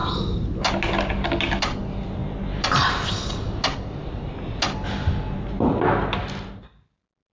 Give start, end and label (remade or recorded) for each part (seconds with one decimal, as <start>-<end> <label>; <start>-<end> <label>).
0.0-7.3 recorded